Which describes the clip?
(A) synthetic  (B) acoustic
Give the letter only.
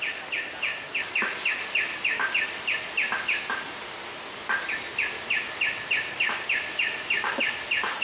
B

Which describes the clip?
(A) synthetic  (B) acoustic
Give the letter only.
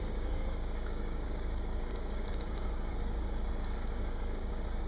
A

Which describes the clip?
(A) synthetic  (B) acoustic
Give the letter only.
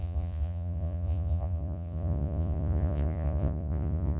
A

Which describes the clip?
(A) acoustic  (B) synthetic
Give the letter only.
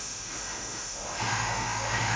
B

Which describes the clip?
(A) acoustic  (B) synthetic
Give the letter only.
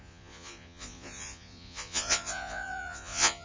B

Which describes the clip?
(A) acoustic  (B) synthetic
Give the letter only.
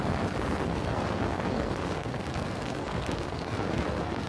B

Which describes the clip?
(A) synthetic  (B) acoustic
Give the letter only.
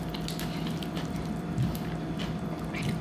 B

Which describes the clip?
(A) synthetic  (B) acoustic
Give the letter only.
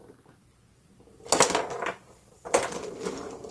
B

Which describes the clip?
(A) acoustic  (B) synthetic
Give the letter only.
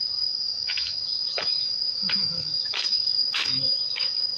B